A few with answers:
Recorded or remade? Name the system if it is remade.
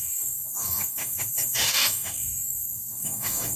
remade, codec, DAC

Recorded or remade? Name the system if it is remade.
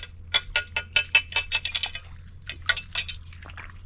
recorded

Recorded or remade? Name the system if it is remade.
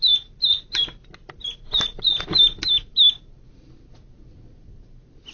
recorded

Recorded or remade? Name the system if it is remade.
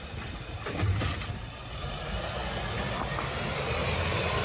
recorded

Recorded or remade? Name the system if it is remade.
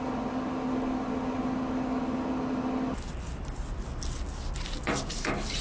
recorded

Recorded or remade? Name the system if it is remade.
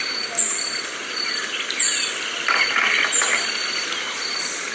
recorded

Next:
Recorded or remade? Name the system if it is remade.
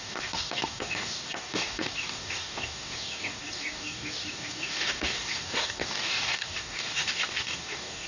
remade, codec, DAC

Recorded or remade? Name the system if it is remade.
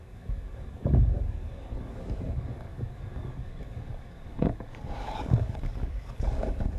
remade, codec, DAC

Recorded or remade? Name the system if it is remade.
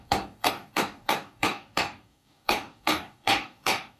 remade, codec, DAC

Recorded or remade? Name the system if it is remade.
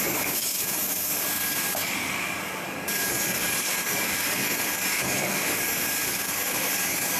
remade, codec, DAC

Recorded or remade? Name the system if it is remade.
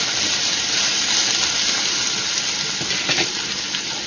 recorded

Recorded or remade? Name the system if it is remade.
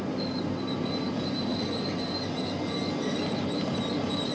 recorded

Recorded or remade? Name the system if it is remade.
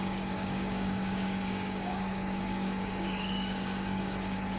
remade, codec, DAC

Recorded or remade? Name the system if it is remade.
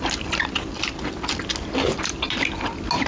recorded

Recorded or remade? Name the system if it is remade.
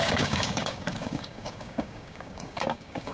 remade, codec, DAC